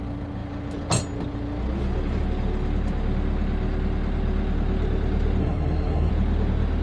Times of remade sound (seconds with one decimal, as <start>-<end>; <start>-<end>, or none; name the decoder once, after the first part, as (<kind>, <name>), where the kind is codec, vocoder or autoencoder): 5.4-6.1 (codec, SNAC)